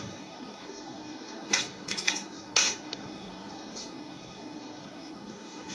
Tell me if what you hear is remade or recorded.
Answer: remade